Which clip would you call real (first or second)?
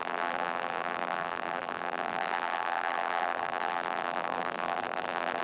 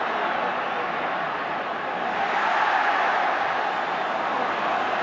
second